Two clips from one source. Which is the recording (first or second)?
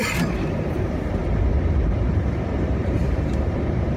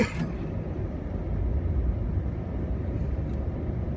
second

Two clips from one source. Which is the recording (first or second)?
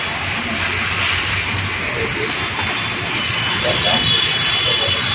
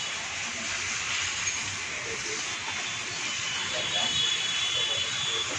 first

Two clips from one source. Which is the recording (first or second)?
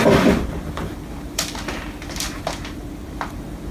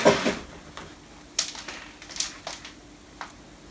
second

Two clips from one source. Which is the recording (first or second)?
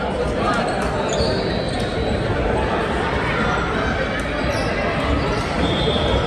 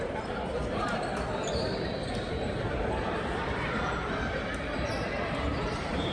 first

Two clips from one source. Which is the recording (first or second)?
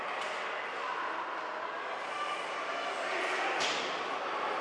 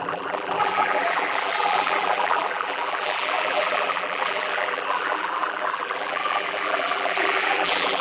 first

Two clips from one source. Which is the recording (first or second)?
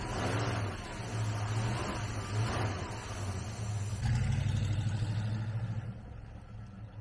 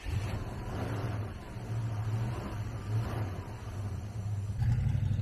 first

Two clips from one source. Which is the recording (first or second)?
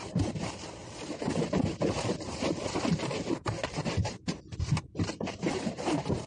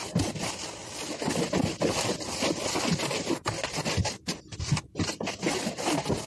second